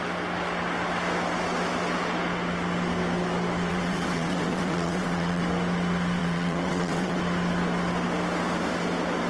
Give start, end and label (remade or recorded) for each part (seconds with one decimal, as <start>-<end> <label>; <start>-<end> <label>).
0.0-3.7 recorded; 3.7-5.4 remade; 5.4-6.2 recorded; 6.2-7.2 remade; 7.2-9.3 recorded